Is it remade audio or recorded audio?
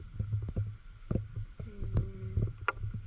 recorded